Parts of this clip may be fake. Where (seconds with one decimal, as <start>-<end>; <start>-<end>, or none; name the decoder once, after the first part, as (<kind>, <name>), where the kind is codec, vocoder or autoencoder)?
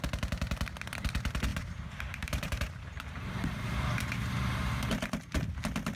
1.5-4.7 (vocoder, BigVGAN v2)